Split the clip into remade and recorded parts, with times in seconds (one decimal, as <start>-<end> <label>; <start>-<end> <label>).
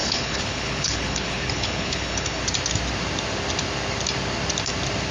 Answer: 0.0-2.4 remade; 2.4-5.1 recorded